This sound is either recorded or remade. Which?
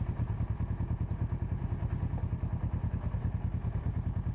recorded